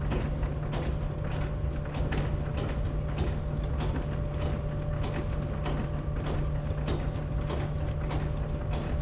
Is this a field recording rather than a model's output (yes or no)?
yes